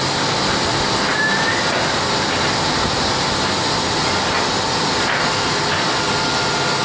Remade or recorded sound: recorded